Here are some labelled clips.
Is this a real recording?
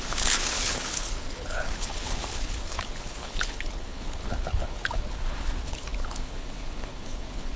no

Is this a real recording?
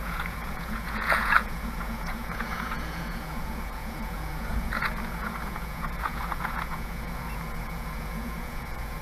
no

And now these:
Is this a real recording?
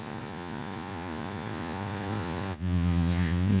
no